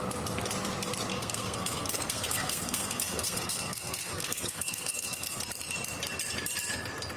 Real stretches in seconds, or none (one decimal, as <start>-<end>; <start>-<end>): 0.0-1.1; 5.4-7.2